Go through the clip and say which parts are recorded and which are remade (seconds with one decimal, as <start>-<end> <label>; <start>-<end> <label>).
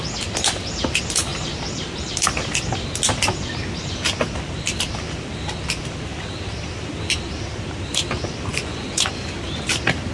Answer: 0.0-8.5 recorded; 8.5-9.1 remade; 9.1-10.1 recorded